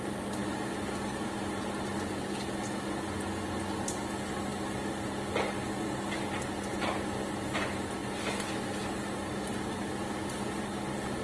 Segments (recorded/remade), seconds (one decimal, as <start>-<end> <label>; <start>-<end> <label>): 0.0-11.2 recorded